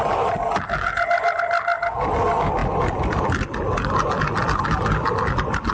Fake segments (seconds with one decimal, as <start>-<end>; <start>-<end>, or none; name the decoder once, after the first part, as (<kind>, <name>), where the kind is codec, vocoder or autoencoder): none